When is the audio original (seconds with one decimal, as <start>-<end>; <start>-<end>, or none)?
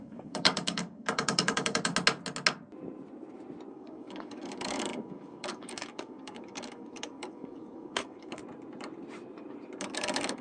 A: 1.9-3.7; 8.4-9.8